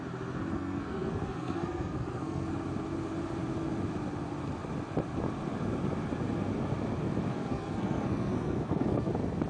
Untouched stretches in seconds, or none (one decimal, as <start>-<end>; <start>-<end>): 0.0-0.5; 2.5-7.3; 9.1-9.5